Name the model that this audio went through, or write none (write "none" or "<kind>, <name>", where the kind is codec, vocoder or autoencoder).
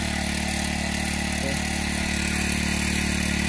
none